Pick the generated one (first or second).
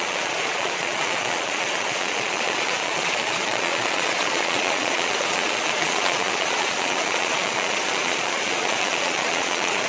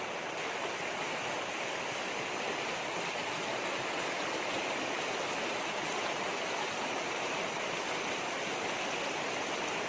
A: first